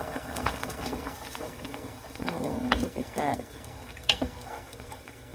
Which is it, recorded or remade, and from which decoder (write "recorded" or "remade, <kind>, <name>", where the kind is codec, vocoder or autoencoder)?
remade, codec, SNAC